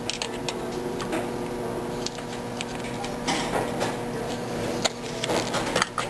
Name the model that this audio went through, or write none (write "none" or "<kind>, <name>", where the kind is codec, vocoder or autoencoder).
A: none